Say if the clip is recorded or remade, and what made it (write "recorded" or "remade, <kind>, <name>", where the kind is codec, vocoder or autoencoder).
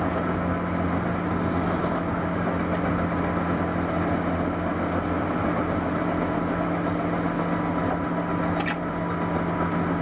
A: recorded